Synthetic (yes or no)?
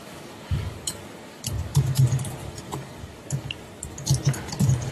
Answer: yes